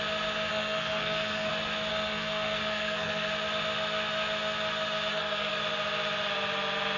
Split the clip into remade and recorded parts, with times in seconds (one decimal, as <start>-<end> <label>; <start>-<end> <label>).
0.0-0.5 recorded; 0.5-1.5 remade; 1.5-1.9 recorded; 1.9-3.3 remade; 3.3-5.1 recorded; 5.1-5.6 remade; 5.6-7.0 recorded